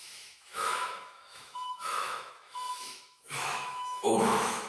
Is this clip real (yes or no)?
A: no